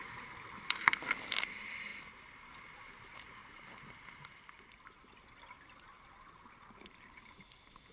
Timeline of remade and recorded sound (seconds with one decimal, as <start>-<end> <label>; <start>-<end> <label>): 0.0-1.9 recorded; 1.9-2.5 remade; 2.5-7.9 recorded